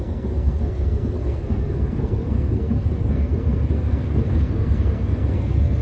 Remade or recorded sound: remade